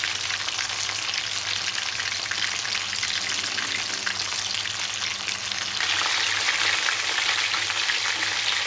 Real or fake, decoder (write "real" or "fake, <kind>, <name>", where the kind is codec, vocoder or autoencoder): real